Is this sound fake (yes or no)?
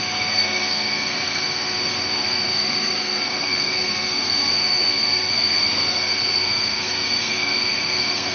yes